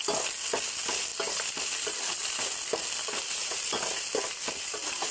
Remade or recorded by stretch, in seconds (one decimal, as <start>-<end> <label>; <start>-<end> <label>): 0.0-5.1 recorded